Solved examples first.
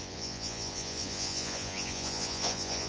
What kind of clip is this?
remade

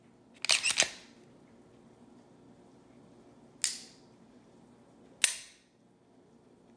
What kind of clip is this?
recorded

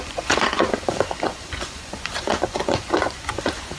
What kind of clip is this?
remade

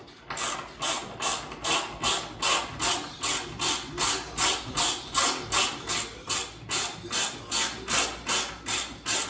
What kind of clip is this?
recorded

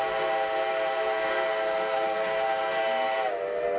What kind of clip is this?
recorded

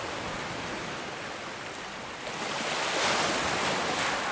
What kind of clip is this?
recorded